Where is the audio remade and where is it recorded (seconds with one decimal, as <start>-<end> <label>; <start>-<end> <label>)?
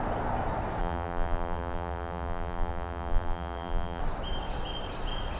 0.0-0.8 recorded; 0.8-4.0 remade; 4.0-5.4 recorded